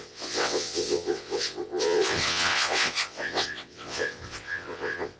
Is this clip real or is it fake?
fake